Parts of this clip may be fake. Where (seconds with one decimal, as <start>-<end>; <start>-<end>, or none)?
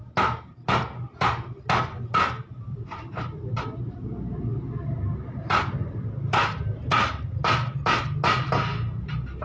none